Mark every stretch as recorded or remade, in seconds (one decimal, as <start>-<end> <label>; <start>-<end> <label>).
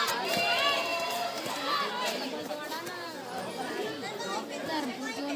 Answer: 0.0-5.4 remade